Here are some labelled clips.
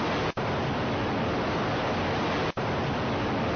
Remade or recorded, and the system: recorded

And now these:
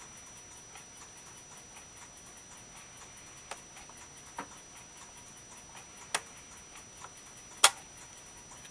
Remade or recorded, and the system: recorded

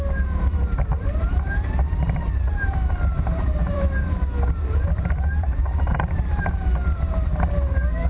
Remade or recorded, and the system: remade, vocoder, BigVGAN v2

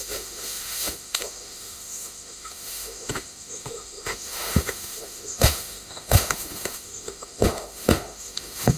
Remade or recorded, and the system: remade, autoencoder, DAC-VAE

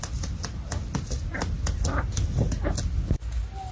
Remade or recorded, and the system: recorded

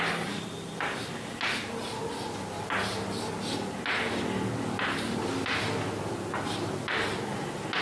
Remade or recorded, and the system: recorded